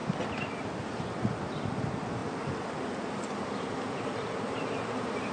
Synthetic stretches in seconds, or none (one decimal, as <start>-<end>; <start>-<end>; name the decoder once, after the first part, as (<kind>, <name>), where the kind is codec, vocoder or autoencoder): none